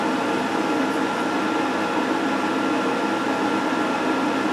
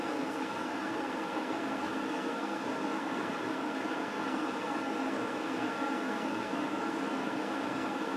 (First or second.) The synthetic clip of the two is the second